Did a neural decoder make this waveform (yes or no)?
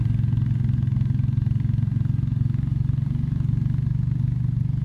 no